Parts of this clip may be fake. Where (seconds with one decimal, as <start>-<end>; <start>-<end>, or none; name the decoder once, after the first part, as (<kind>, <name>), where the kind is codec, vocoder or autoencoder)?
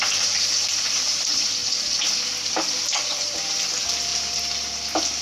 0.0-1.6 (vocoder, BigVGAN v2); 2.5-5.2